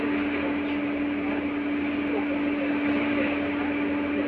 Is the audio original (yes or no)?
yes